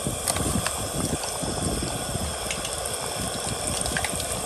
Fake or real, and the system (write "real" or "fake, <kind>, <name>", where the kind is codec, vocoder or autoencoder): real